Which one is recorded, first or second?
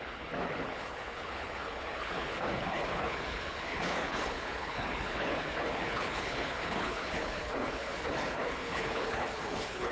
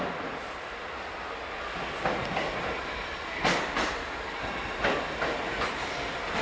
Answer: second